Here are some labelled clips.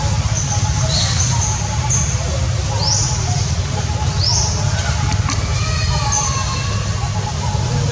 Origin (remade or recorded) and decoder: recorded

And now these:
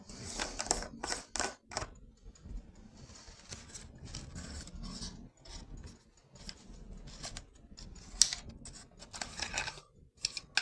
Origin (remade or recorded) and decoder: recorded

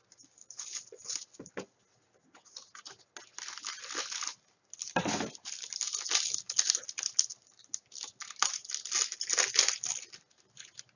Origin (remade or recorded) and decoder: recorded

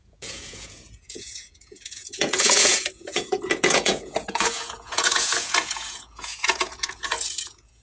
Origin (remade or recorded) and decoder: remade, vocoder, Vocos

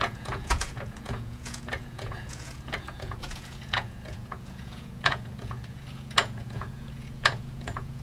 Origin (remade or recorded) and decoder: remade, vocoder, Vocos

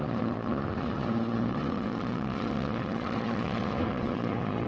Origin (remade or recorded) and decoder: remade, vocoder, Vocos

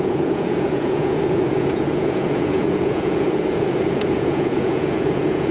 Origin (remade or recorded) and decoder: remade, vocoder, Vocos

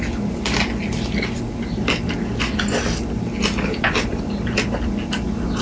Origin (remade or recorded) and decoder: recorded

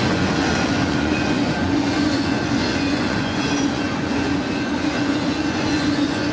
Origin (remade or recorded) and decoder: remade, vocoder, Vocos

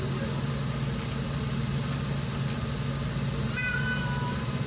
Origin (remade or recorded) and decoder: recorded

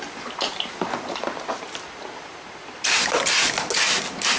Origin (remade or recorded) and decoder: recorded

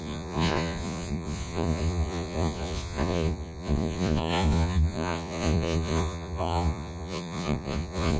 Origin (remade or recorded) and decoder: remade, vocoder, Vocos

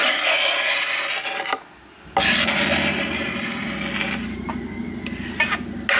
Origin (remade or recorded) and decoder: recorded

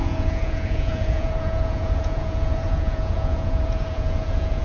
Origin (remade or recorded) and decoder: remade, vocoder, Vocos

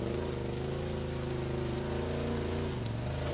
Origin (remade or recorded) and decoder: recorded